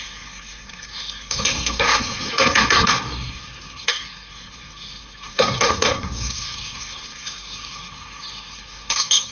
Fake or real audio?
fake